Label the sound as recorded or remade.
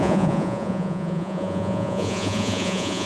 remade